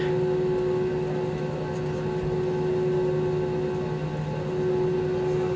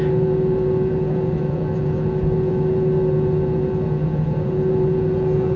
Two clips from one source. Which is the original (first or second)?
first